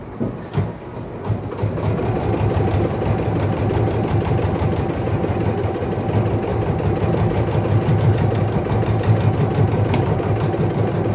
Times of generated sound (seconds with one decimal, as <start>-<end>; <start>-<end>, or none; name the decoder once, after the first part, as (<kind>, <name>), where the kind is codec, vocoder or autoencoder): none